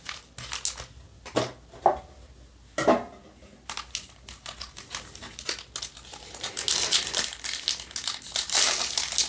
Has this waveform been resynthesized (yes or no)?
no